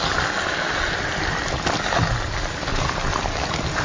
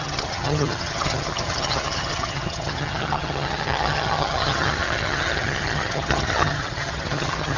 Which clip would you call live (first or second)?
first